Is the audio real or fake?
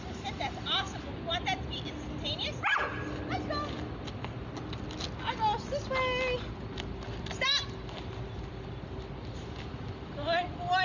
real